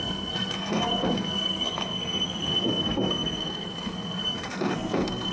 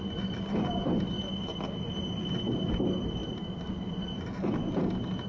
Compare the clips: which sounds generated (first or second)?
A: first